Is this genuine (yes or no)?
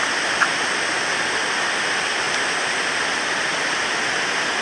yes